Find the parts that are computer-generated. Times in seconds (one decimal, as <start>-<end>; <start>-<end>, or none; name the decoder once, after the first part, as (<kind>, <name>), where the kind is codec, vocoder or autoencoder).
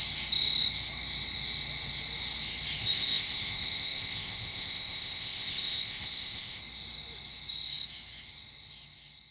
2.8-6.6 (codec, ZipCodec)